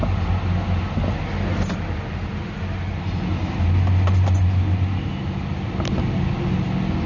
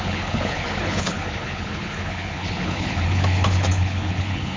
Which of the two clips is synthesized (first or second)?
second